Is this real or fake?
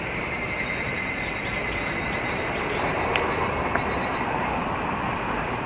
real